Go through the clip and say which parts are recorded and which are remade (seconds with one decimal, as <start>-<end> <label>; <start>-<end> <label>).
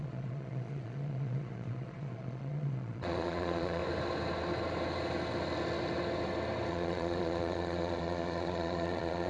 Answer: 0.0-3.8 remade; 3.8-6.7 recorded; 6.7-9.3 remade